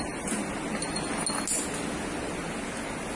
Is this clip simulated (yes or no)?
no